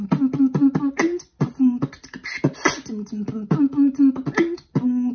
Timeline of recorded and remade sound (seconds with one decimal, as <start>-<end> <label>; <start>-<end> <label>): 0.0-5.1 recorded